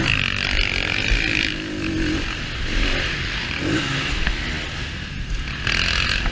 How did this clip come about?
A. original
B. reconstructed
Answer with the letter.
A